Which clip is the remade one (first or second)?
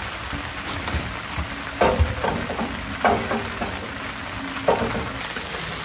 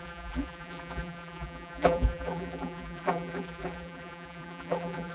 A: second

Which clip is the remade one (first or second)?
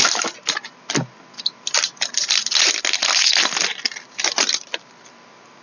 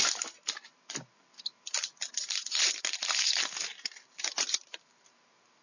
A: second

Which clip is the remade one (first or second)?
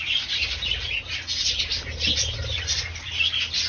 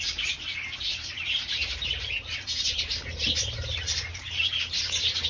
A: second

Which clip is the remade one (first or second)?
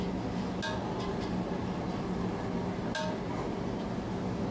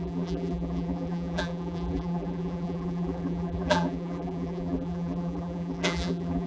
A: second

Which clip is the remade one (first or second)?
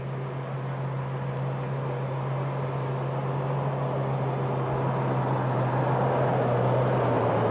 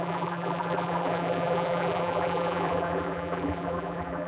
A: second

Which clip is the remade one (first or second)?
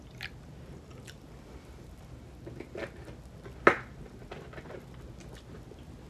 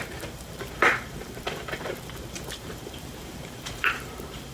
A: second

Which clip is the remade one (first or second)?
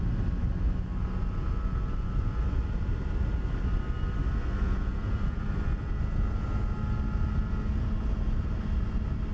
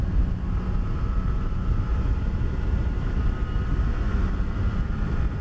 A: second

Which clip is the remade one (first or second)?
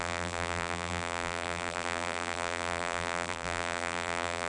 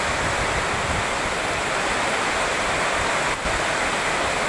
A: first